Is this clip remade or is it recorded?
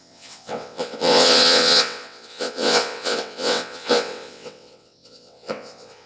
remade